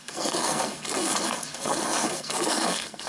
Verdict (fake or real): fake